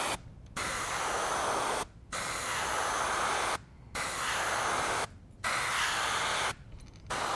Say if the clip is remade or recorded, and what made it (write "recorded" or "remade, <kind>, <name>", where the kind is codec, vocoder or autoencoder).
recorded